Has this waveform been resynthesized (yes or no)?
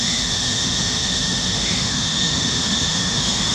yes